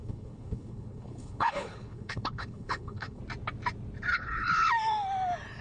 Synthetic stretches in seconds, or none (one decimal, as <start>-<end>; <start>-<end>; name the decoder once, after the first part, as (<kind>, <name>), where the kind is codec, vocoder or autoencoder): 0.0-3.2 (codec, HILCodec); 4.1-4.7